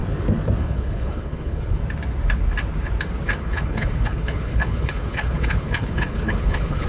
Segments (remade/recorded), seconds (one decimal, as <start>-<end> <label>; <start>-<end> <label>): 0.0-0.6 recorded; 0.6-1.8 remade; 1.8-3.4 recorded; 3.4-6.9 remade